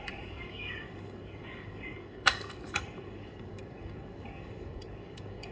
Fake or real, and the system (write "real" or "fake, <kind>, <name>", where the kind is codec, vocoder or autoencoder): fake, codec, DAC